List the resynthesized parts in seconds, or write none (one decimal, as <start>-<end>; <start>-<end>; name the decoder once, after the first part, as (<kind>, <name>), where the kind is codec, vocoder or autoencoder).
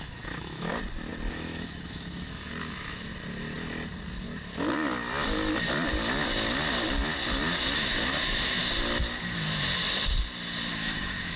0.0-0.7 (autoencoder, DAC-VAE); 1.3-3.1; 7.6-8.6; 10.7-11.4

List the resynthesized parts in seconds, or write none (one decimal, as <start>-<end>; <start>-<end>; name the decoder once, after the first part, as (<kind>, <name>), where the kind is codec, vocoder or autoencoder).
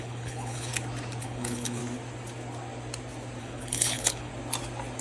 0.0-0.7 (codec, HILCodec); 1.2-1.8; 3.4-4.3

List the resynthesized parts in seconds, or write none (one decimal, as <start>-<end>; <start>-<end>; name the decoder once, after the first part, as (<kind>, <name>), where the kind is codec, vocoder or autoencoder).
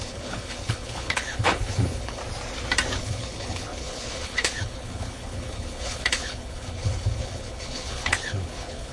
0.0-2.2 (codec, HILCodec); 3.0-8.9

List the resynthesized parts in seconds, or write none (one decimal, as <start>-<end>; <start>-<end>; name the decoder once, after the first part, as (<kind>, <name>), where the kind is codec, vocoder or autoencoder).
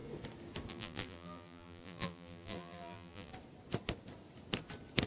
0.7-3.3 (vocoder, BigVGAN v2)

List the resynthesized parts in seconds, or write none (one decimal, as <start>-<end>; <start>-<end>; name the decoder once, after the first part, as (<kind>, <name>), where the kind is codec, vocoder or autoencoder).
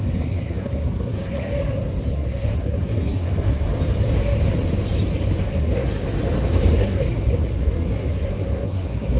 0.0-1.5 (codec, SNAC); 2.1-3.7; 5.4-6.0; 6.7-9.2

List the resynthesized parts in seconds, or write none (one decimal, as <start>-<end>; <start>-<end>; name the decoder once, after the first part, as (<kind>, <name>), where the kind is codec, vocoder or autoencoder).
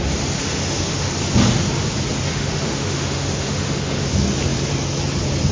0.4-1.1 (autoencoder, DAC-VAE); 2.3-4.1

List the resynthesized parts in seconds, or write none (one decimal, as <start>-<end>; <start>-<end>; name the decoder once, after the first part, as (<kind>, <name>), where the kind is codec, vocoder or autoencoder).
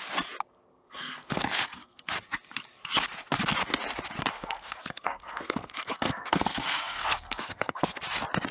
0.7-2.0 (codec, SNAC); 4.3-8.0